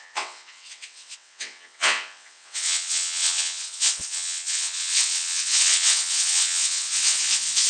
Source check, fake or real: fake